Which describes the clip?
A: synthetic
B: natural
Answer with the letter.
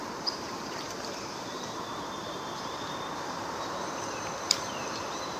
A